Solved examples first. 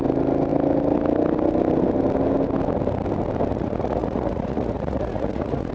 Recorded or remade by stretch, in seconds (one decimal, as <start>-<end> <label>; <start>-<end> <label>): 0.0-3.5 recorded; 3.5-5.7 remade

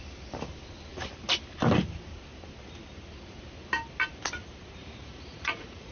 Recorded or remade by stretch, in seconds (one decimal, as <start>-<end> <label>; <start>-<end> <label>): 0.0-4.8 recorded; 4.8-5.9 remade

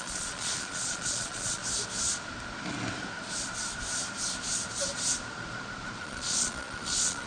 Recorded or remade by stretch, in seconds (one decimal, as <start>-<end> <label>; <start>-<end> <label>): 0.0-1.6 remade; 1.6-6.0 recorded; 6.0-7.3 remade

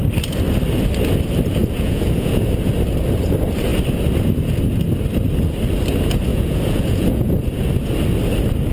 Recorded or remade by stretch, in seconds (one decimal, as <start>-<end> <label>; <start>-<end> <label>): 0.0-1.6 recorded; 1.6-2.7 remade; 2.7-6.3 recorded; 6.3-7.3 remade; 7.3-8.7 recorded